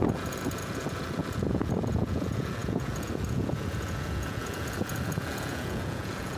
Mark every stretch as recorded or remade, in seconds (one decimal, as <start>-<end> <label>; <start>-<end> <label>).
0.0-6.4 remade